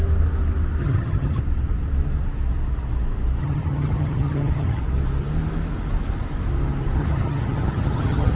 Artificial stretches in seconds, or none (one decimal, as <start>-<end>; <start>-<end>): 0.8-1.4; 3.4-4.8; 7.0-8.3